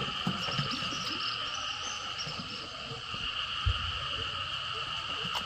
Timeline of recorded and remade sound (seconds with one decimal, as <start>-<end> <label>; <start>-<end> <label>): 0.0-1.4 recorded; 1.4-4.2 remade; 4.2-5.5 recorded